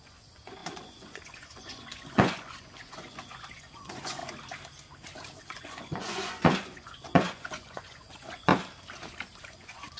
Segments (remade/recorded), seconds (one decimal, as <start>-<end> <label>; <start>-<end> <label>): 0.0-4.2 remade; 4.2-5.4 recorded; 5.4-8.5 remade; 8.5-9.4 recorded; 9.4-10.0 remade

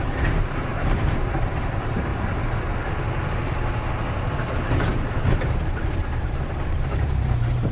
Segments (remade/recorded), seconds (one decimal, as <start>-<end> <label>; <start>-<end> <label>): 0.0-2.1 remade; 2.1-6.1 recorded; 6.1-7.7 remade

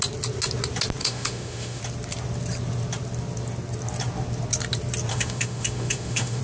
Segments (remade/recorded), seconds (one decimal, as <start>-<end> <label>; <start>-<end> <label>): 0.0-1.0 recorded; 1.0-1.8 remade; 1.8-5.1 recorded; 5.1-6.4 remade

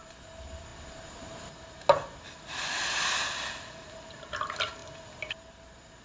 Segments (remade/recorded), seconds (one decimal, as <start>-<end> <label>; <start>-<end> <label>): 0.0-6.0 recorded

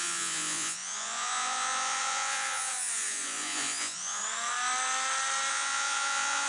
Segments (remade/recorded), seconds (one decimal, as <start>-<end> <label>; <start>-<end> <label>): 0.0-4.2 remade; 4.2-5.5 recorded; 5.5-6.5 remade

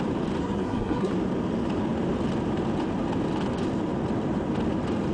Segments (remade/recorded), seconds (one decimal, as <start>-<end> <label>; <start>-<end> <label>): 0.0-0.4 recorded; 0.4-1.1 remade; 1.1-5.1 recorded

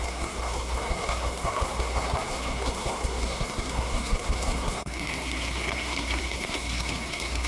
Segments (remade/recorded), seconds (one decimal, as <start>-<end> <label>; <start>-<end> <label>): 0.0-7.5 remade

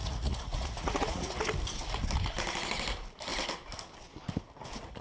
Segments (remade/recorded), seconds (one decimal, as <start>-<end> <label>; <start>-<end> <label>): 0.0-1.4 remade; 1.4-5.0 recorded